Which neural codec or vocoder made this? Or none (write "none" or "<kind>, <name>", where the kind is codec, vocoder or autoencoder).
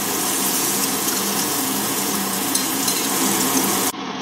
vocoder, Vocos